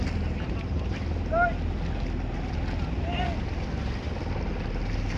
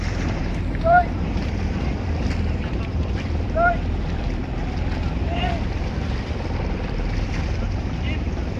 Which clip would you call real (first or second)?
first